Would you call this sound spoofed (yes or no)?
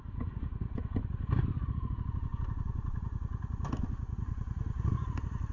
no